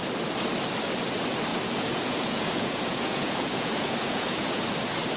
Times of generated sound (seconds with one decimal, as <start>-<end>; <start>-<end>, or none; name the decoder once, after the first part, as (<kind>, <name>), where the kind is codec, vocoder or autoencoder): 1.5-4.6 (vocoder, Vocos)